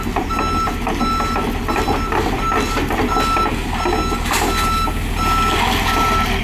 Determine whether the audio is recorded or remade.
recorded